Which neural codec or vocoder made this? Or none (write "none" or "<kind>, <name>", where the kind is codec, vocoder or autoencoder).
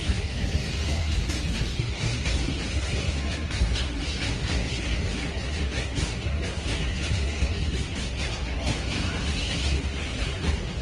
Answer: codec, SNAC